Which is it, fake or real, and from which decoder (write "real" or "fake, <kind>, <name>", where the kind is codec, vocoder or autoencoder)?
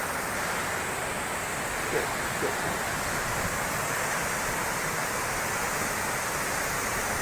real